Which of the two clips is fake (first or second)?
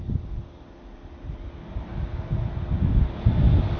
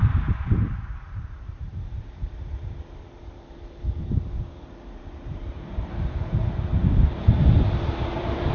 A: second